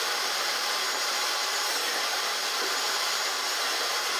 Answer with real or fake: fake